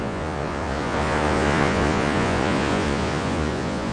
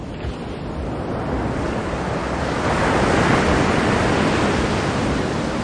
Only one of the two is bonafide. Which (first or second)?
second